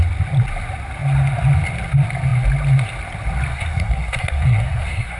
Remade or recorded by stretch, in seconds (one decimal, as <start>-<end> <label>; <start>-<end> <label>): 0.0-3.5 recorded; 3.5-5.2 remade